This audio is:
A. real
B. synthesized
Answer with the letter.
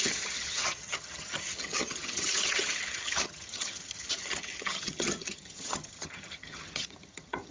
B